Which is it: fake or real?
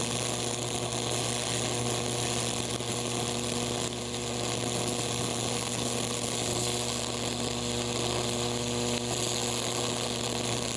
real